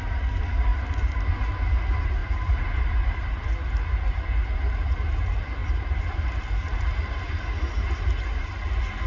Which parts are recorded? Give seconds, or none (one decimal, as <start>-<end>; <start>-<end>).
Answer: 0.0-0.7; 1.3-2.2; 2.9-5.6; 6.3-9.1